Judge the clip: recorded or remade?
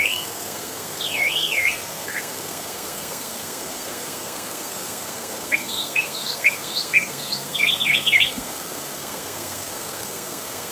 remade